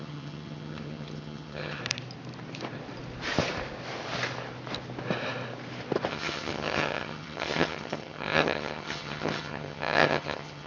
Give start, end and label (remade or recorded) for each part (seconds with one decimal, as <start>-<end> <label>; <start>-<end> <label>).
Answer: 0.0-1.8 remade; 1.8-6.1 recorded; 6.1-10.7 remade